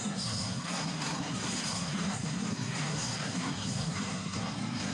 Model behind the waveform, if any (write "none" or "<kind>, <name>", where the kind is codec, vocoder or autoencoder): codec, SNAC